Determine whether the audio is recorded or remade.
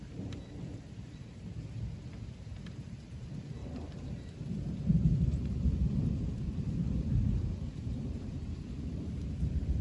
remade